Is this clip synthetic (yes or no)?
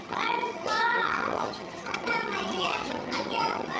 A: yes